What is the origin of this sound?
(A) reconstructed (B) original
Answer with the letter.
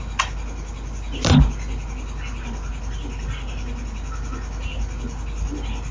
B